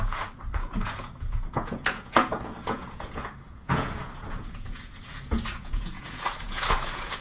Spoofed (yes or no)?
yes